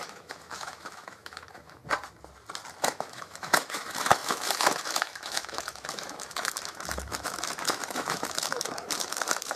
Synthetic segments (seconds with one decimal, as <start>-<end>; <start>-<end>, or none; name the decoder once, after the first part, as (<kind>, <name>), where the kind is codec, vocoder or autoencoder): 0.0-1.8 (autoencoder, DAC-VAE); 2.8-9.6